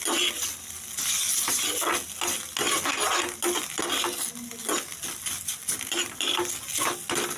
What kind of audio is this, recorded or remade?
recorded